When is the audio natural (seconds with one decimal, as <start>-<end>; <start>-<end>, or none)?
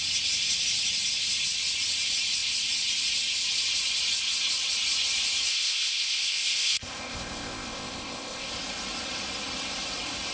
0.0-5.5; 8.5-10.3